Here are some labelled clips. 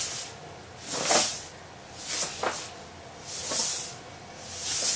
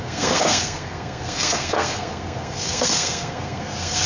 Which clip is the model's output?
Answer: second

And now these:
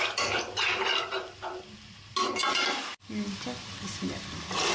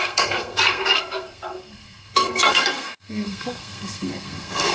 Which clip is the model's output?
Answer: second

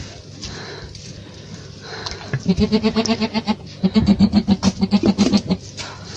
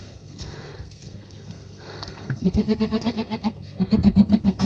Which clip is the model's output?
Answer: second